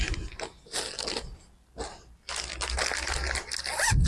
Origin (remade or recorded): recorded